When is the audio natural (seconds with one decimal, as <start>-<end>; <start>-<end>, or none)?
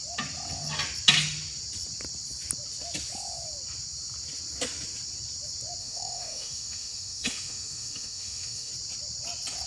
0.0-5.8; 8.7-9.7